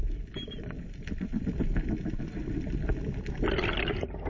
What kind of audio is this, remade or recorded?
recorded